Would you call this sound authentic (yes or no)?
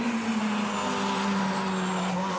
yes